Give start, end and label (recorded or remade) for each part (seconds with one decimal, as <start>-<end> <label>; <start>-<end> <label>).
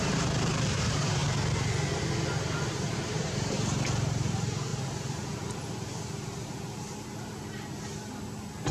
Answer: 0.0-1.2 remade; 1.2-2.7 recorded; 2.7-4.7 remade; 4.7-8.7 recorded